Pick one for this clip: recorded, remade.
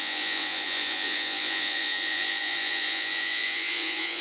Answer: remade